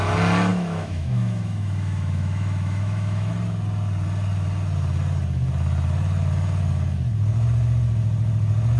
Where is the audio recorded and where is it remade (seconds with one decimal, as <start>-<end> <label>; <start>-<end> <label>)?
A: 0.0-0.5 recorded; 0.5-3.3 remade; 3.3-8.8 recorded